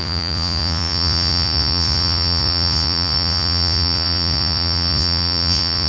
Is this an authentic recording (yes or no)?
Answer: no